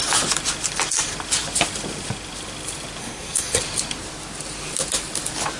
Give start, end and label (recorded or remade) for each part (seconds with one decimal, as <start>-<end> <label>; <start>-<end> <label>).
0.0-3.0 recorded; 3.0-3.6 remade; 3.6-5.6 recorded